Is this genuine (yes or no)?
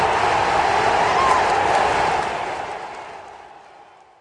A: yes